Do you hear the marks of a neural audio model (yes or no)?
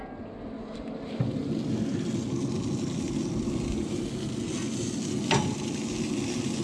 no